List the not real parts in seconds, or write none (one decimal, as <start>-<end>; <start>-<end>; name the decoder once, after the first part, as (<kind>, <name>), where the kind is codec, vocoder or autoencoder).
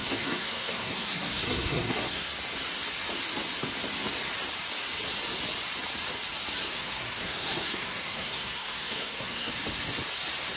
0.0-2.3 (codec, SNAC); 6.6-9.5